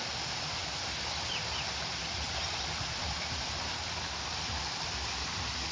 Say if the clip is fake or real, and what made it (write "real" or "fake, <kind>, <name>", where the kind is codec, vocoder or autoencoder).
real